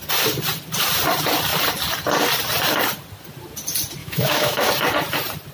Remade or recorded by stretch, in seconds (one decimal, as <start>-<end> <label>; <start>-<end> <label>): 0.0-4.0 recorded; 4.0-4.7 remade; 4.7-5.5 recorded